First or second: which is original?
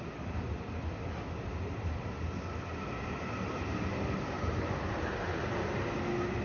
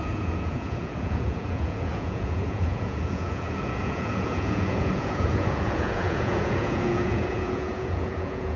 first